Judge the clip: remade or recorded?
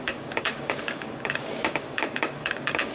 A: remade